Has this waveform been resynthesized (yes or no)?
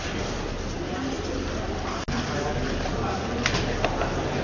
no